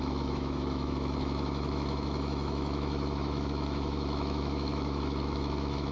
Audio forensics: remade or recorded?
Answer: remade